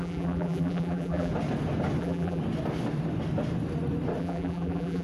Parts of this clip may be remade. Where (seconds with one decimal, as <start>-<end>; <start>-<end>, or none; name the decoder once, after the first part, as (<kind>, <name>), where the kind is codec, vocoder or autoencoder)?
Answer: 0.0-1.3 (vocoder, BigVGAN v2); 2.0-2.4; 4.2-5.0